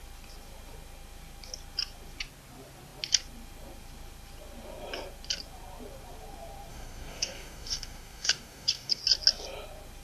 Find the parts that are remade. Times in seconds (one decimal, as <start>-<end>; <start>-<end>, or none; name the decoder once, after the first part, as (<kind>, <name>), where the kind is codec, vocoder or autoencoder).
6.7-9.0 (codec, DAC)

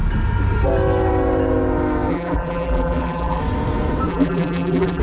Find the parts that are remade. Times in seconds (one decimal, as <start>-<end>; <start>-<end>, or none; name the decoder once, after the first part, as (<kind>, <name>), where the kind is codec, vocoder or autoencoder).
2.1-3.4 (vocoder, BigVGAN v2); 4.1-5.0

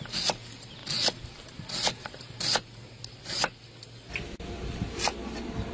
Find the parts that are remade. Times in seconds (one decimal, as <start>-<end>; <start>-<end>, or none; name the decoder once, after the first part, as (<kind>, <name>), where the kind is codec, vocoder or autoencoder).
none